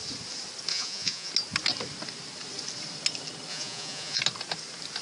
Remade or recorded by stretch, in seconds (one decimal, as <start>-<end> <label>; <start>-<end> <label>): 0.0-0.7 recorded; 0.7-1.3 remade; 1.3-3.5 recorded; 3.5-4.2 remade; 4.2-5.0 recorded